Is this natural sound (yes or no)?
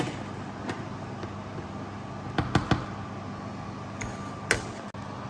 yes